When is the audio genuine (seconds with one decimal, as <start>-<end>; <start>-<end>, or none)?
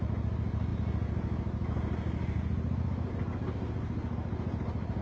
0.0-5.0